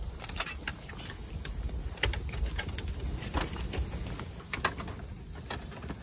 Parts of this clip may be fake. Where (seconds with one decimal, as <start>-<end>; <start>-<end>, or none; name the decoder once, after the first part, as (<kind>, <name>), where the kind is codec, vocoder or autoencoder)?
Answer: none